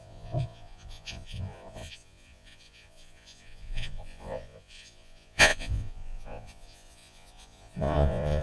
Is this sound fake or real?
fake